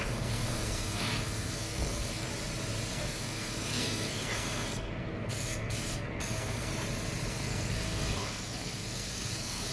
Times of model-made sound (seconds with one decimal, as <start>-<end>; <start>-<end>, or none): 0.0-2.3; 2.9-6.7; 7.3-9.7